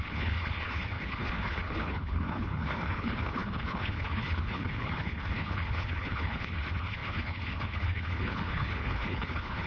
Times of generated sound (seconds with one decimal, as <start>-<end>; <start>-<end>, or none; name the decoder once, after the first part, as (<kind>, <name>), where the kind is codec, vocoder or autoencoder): 0.0-9.7 (codec, HILCodec)